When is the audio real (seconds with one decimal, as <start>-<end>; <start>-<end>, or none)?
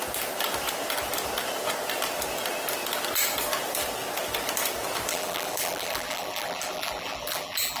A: 0.0-5.1